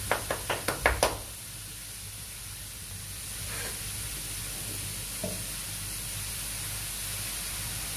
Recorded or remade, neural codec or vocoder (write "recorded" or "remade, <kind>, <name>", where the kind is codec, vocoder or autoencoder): recorded